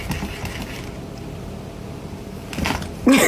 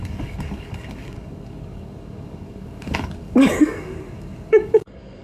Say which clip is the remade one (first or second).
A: second